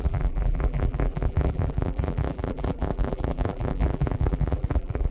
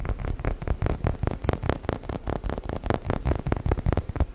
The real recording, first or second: second